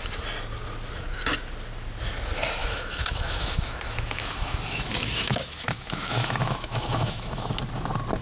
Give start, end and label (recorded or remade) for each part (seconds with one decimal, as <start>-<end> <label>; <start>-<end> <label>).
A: 0.0-2.6 recorded; 2.6-7.5 remade; 7.5-8.2 recorded